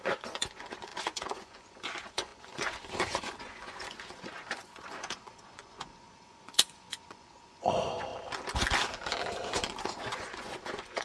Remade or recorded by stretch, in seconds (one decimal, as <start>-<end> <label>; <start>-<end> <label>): 0.0-8.1 remade; 8.1-9.8 recorded; 9.8-11.0 remade